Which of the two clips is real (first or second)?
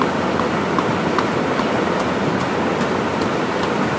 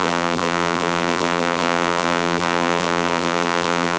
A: first